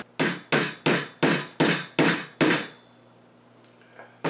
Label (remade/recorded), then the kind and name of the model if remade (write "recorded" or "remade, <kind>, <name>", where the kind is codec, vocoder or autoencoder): recorded